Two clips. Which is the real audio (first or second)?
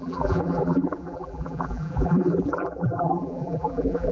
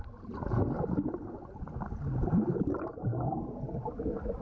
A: second